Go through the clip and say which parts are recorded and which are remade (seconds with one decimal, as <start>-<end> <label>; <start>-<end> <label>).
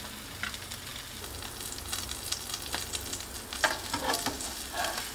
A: 0.0-5.1 recorded